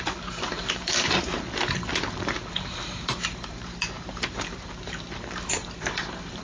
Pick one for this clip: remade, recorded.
remade